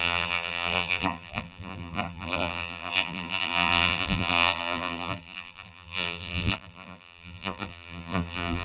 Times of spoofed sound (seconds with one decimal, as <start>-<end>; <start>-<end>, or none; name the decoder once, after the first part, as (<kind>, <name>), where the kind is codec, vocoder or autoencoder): 0.0-8.6 (vocoder, BigVGAN v2)

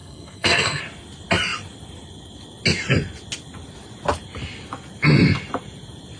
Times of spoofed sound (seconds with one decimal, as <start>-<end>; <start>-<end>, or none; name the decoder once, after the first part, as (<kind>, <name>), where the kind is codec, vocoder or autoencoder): 0.0-0.8 (codec, SNAC)

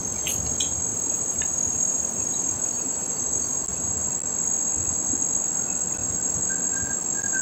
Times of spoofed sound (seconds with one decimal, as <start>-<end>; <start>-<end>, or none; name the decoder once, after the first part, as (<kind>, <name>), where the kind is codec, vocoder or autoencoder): 0.9-3.2 (vocoder, BigVGAN v2)

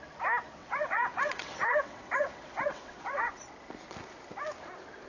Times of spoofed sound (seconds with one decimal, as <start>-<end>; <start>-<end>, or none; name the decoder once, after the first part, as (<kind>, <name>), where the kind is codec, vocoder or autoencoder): 0.6-3.3 (vocoder, WaveNeXt)

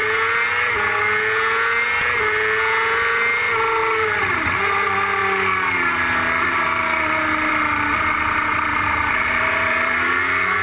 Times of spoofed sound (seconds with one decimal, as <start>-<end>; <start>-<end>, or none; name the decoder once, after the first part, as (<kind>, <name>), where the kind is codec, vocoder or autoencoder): 3.8-4.5 (vocoder, BigVGAN v2); 8.7-10.2

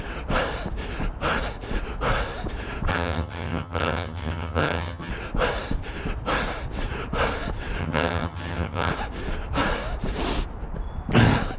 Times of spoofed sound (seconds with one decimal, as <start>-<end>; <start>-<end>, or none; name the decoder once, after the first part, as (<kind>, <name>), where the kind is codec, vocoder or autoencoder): 2.9-5.1 (vocoder, HiFi-GAN); 7.8-8.9

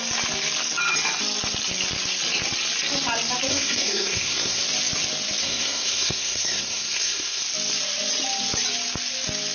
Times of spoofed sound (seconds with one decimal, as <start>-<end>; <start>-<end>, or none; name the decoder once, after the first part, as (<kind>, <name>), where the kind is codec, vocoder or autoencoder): 3.5-4.6 (codec, SNAC); 5.4-7.4

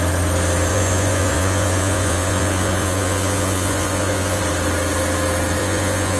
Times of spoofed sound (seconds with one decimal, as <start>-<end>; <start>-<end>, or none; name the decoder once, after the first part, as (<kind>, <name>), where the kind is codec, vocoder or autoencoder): 0.7-4.4 (vocoder, Vocos); 5.6-6.2